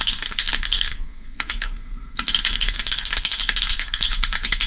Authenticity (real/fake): fake